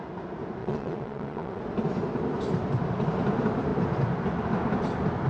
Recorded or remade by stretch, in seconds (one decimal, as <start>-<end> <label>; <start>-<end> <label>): 0.0-0.6 recorded; 0.6-1.6 remade; 1.6-5.3 recorded